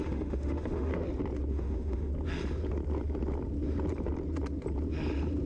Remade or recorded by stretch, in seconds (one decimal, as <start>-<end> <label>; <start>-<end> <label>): 0.0-0.9 remade; 0.9-1.5 recorded; 1.5-2.1 remade; 2.1-5.5 recorded